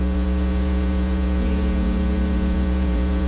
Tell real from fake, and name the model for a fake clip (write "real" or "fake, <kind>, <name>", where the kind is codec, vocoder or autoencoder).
fake, vocoder, Vocos